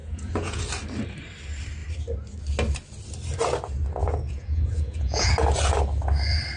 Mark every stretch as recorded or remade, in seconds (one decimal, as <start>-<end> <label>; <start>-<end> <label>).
0.0-0.6 remade; 0.6-4.0 recorded; 4.0-5.3 remade; 5.3-6.6 recorded